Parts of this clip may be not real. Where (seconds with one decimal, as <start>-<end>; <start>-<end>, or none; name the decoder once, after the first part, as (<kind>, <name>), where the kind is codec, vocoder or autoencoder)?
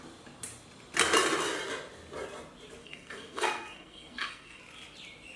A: 2.8-4.6 (codec, SNAC)